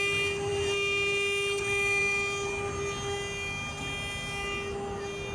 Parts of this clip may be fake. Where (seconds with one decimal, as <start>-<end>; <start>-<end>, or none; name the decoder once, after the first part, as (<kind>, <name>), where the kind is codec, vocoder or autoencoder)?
none